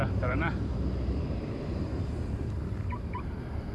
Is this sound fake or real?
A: fake